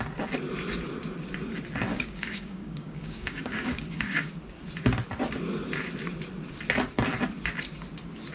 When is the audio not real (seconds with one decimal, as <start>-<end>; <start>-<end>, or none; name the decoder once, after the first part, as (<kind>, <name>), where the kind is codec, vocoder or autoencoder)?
1.9-4.3 (codec, DAC)

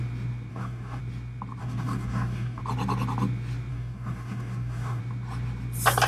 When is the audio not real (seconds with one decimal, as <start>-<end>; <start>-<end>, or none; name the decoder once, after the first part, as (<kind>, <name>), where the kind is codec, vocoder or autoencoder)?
0.5-1.0 (codec, DAC); 1.6-2.6; 3.7-5.0

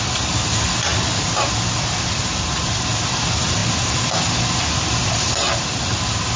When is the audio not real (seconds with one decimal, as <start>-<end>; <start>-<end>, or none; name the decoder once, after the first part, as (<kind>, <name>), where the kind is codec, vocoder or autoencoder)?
none

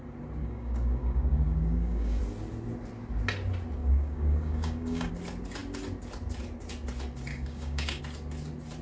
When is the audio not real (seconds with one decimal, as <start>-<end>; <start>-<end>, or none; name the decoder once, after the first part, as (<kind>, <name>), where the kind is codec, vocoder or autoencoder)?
0.4-2.2 (codec, DAC); 3.8-5.1; 7.3-8.0

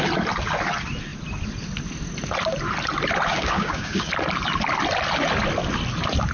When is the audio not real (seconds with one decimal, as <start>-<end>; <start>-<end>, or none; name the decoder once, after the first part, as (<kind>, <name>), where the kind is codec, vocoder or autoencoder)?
3.3-4.1 (codec, DAC)